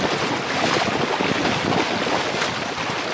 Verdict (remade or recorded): recorded